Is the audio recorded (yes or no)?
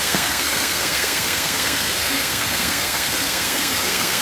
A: no